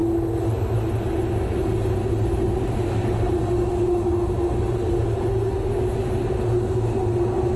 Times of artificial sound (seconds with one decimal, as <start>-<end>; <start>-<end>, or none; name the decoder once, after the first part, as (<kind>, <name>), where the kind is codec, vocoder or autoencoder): none